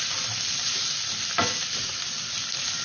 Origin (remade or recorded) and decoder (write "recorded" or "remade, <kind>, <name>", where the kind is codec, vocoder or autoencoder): recorded